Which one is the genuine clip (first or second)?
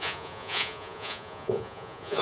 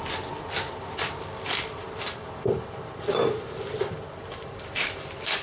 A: second